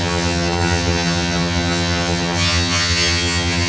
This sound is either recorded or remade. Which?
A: remade